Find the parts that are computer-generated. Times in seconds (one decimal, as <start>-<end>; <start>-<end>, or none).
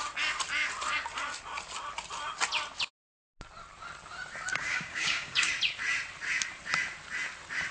4.5-5.5